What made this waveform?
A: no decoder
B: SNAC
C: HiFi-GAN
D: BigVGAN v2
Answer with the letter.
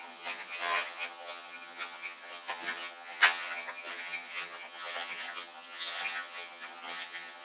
C